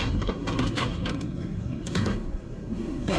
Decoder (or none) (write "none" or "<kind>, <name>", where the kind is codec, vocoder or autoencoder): codec, SNAC